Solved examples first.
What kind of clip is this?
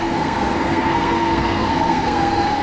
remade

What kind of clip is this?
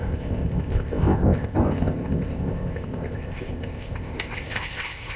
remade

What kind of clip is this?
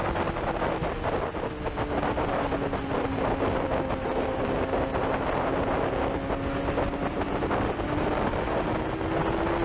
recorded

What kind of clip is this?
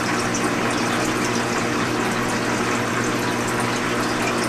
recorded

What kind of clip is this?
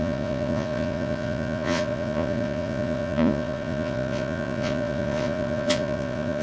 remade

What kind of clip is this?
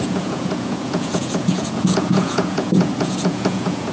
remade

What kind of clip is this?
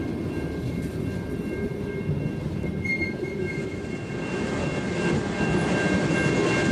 recorded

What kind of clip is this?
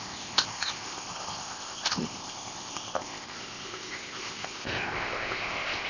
remade